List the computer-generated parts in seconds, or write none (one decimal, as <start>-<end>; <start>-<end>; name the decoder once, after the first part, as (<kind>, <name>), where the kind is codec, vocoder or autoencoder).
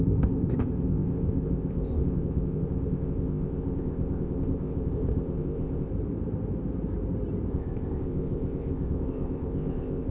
0.0-5.9 (codec, ZipCodec); 7.5-10.1